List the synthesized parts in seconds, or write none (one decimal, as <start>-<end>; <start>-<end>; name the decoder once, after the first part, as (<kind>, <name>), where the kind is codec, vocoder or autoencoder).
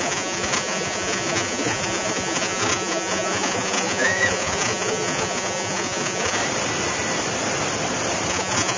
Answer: 0.0-6.4 (vocoder, Vocos); 8.3-8.8